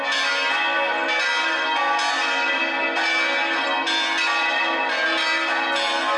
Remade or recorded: recorded